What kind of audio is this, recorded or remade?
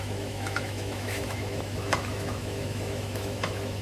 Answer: remade